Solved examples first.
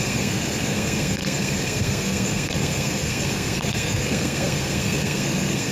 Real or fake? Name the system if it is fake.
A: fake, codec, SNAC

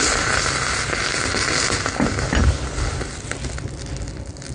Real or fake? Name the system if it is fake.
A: real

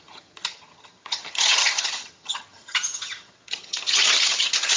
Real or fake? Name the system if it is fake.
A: fake, vocoder, HiFi-GAN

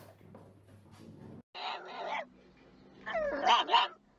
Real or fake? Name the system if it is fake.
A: real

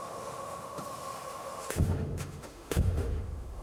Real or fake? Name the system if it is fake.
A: fake, autoencoder, DAC-VAE